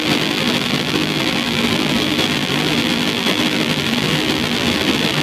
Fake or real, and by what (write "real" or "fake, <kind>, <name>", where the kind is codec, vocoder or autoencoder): fake, vocoder, BigVGAN v2